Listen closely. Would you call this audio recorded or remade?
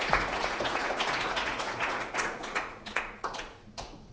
remade